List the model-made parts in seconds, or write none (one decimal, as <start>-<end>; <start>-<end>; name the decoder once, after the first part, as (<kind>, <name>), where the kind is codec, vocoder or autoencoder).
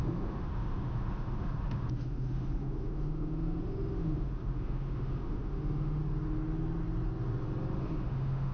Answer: 0.0-6.0 (autoencoder, DAC-VAE); 7.8-8.5